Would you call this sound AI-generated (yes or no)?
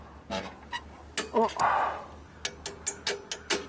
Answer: no